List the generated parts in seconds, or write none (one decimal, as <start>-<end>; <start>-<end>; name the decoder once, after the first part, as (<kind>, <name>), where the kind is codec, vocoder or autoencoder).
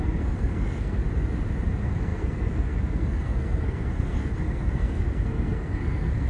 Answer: 0.0-1.0 (codec, SNAC); 1.7-6.3